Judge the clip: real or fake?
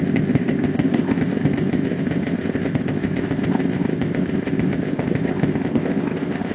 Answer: fake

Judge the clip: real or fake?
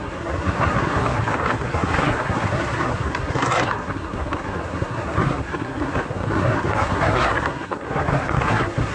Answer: fake